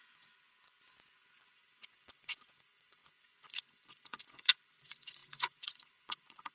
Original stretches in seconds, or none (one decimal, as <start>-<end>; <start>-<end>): none